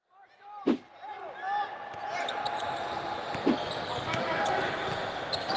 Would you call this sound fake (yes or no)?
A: no